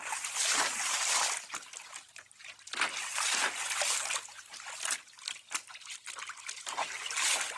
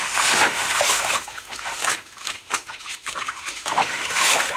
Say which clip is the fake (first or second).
second